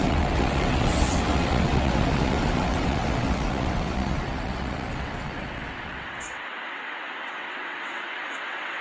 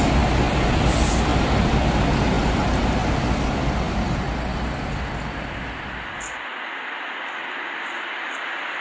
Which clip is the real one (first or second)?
second